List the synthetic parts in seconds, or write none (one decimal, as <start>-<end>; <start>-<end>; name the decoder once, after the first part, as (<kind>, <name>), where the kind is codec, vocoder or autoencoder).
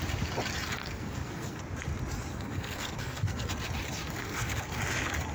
0.8-1.6 (codec, SNAC); 2.3-3.5; 4.2-4.8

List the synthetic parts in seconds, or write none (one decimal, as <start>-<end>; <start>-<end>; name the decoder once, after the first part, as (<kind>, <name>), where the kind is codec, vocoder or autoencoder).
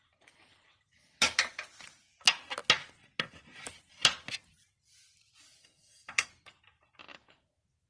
5.6-6.3 (codec, SNAC)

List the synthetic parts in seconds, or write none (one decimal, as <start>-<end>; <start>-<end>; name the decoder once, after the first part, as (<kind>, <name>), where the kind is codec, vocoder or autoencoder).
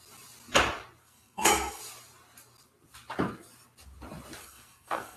1.0-1.8 (codec, SNAC); 4.4-5.2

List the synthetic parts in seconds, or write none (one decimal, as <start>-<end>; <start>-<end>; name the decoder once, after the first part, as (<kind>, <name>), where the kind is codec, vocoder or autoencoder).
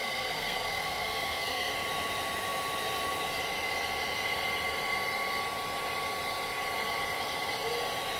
0.0-1.7 (codec, SNAC)